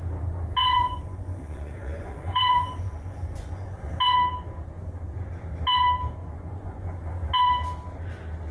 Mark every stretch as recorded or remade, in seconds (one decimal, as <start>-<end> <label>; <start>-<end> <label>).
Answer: 0.0-0.6 recorded; 0.6-3.9 remade; 3.9-6.2 recorded; 6.2-6.9 remade; 6.9-8.5 recorded